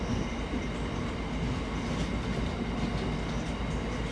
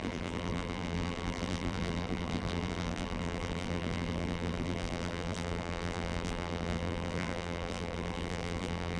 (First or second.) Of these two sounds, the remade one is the second